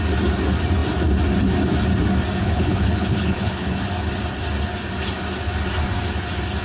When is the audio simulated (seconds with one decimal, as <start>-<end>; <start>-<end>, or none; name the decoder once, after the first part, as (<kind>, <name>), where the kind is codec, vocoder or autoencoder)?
2.4-3.9 (codec, HILCodec)